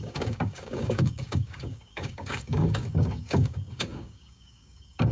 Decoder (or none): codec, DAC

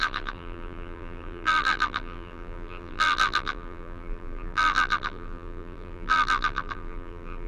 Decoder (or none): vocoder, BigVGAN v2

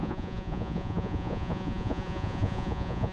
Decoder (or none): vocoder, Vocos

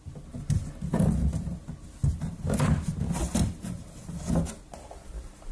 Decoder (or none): none